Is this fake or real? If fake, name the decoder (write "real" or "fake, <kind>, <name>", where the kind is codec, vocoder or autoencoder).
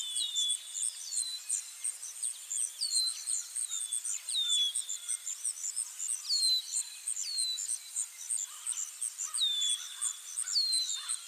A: real